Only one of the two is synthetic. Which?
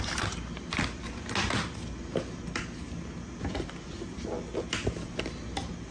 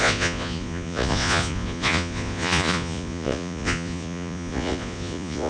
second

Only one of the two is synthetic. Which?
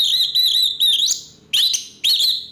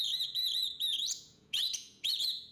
second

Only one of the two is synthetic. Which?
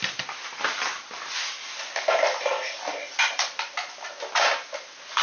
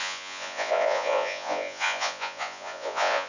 second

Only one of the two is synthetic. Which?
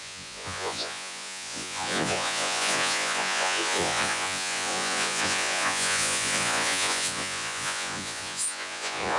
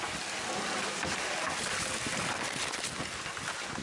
first